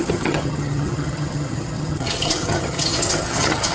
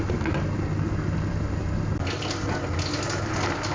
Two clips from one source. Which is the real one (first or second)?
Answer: second